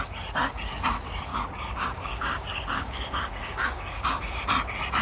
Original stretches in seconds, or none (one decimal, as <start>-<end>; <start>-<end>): 0.0-1.3; 4.2-5.0